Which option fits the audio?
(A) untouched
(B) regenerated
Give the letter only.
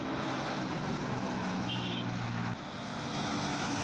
B